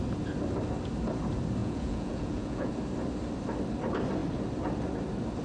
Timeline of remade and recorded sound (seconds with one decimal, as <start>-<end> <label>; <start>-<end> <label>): 0.0-1.6 recorded; 1.6-2.7 remade; 2.7-5.4 recorded